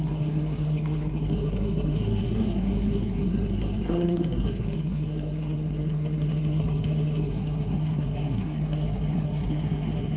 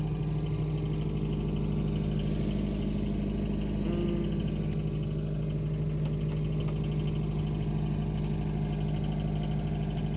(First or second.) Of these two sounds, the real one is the second